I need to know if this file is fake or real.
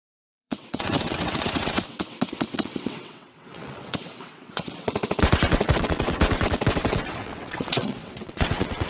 fake